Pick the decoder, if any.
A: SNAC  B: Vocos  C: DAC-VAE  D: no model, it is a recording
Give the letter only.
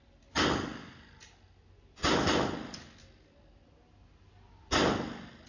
D